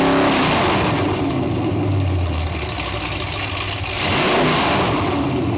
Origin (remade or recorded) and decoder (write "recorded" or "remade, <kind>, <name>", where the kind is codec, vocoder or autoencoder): recorded